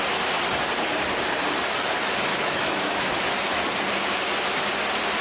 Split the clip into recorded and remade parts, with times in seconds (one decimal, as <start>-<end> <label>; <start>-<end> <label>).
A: 0.0-2.3 recorded; 2.3-3.1 remade; 3.1-5.2 recorded